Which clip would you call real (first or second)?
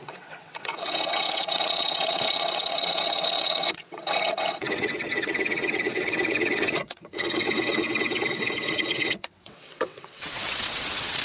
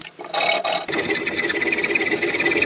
second